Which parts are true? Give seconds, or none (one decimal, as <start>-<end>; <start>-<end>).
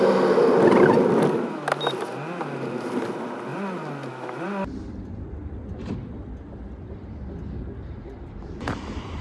0.0-9.2